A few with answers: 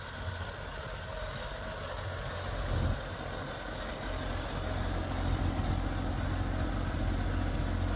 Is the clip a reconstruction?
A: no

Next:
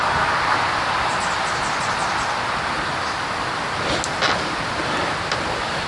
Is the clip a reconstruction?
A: no